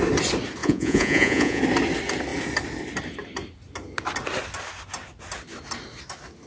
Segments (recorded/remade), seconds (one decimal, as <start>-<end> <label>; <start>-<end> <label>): 0.0-0.6 recorded; 0.6-1.6 remade; 1.6-6.5 recorded